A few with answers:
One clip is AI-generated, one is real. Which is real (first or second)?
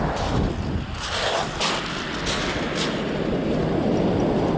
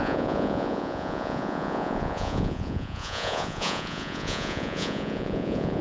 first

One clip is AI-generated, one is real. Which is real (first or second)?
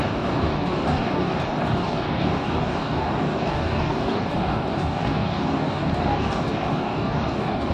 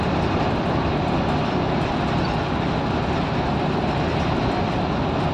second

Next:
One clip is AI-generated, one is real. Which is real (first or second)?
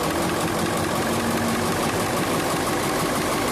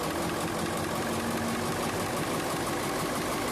second